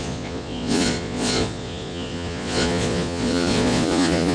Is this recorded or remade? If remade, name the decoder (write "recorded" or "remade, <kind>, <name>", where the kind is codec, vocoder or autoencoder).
remade, vocoder, Vocos